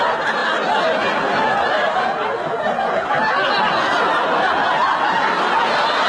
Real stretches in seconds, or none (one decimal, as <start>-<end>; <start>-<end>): 0.0-6.1